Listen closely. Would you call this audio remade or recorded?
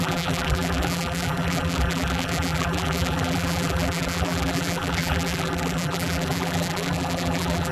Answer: remade